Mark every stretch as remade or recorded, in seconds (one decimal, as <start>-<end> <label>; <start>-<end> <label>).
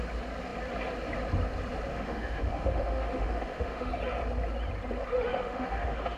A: 0.0-1.9 recorded; 1.9-3.9 remade; 3.9-5.3 recorded; 5.3-6.2 remade